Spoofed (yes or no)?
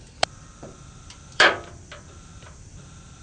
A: yes